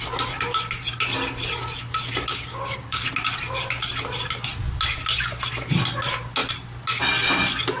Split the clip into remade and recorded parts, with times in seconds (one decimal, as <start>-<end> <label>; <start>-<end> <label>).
0.0-2.3 recorded; 2.3-3.0 remade; 3.0-7.8 recorded